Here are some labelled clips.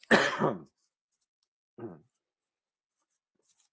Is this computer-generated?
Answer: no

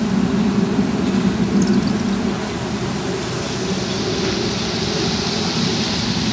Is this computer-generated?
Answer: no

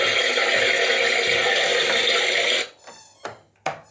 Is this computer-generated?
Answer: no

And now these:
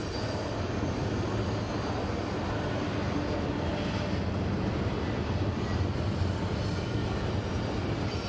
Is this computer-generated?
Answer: no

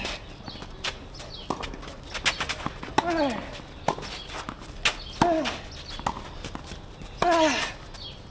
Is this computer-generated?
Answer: no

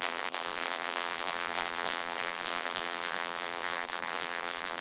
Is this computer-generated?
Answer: yes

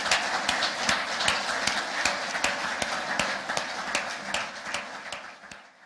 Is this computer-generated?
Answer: no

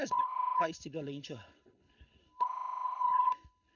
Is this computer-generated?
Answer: yes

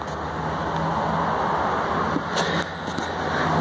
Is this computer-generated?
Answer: no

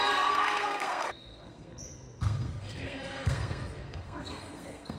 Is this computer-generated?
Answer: yes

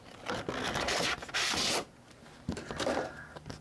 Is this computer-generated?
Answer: no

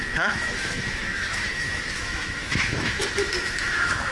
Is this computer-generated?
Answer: yes